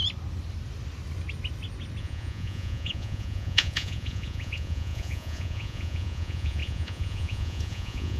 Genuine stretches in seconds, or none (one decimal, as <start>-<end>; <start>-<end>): 0.0-2.0